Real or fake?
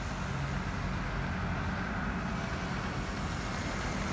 real